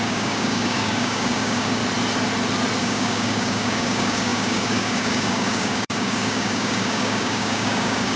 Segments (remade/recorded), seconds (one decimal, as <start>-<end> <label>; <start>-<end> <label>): 0.0-1.8 remade; 1.8-2.8 recorded; 2.8-8.2 remade